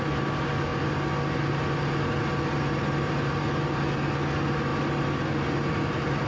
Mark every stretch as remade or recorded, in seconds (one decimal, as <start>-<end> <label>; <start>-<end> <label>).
0.0-6.3 recorded